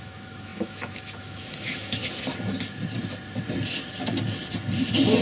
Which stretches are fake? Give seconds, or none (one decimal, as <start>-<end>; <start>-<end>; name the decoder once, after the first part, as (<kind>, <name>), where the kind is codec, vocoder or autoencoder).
0.0-2.0 (autoencoder, DAC-VAE)